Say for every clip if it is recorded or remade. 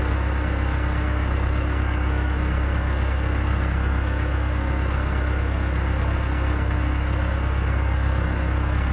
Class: remade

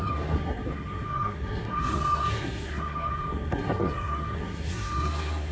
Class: remade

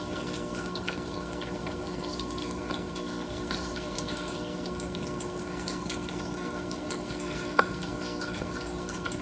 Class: remade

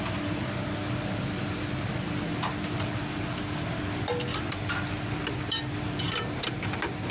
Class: recorded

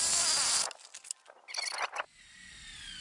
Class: recorded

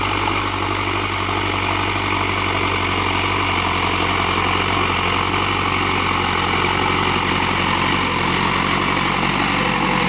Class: recorded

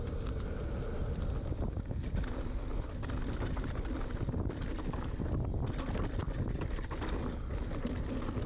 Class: recorded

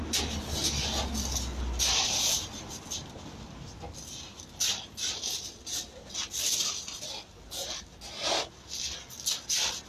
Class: recorded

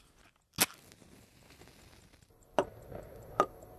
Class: recorded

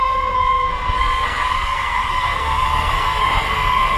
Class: remade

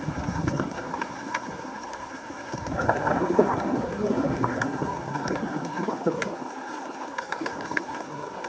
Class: remade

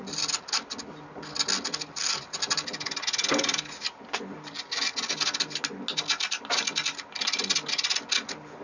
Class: recorded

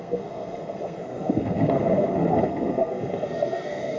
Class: remade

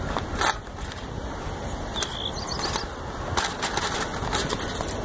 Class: recorded